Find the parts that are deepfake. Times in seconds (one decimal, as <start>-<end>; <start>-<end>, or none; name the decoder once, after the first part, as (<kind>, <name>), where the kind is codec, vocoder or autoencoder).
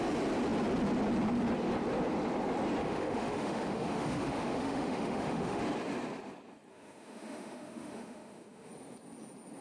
2.8-5.6 (autoencoder, DAC-VAE); 6.7-8.7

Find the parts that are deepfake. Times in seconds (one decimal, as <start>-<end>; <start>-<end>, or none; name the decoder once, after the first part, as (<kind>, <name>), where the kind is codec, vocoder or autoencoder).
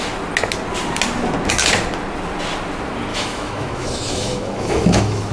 3.1-5.3 (autoencoder, DAC-VAE)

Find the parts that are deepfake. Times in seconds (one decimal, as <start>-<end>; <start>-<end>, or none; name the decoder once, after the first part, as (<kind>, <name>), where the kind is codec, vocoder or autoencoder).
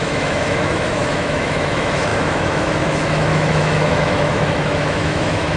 0.0-5.6 (autoencoder, DAC-VAE)